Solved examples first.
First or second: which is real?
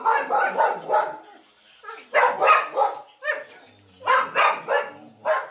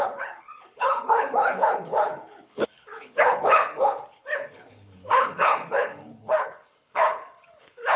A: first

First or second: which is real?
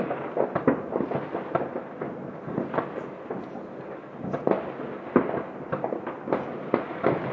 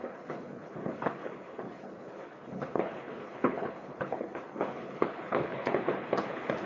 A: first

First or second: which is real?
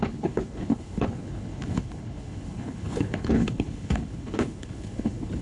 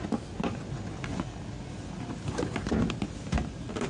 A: second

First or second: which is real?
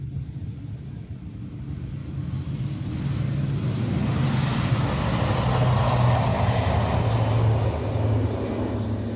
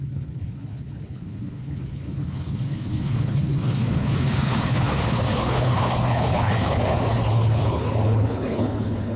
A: first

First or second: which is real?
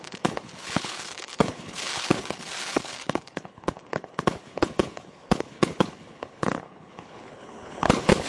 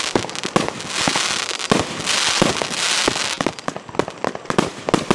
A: second